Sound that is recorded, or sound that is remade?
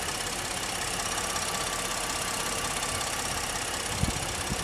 recorded